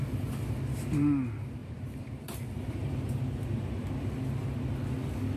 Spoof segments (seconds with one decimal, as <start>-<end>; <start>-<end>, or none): 1.6-3.0